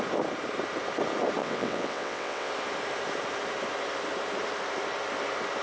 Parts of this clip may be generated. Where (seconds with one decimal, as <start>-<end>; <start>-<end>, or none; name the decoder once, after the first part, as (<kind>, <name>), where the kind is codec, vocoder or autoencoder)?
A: 1.4-2.5 (vocoder, WaveNeXt)